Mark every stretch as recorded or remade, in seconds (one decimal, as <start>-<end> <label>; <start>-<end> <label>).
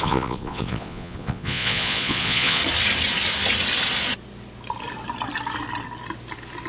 0.0-2.6 remade; 2.6-6.7 recorded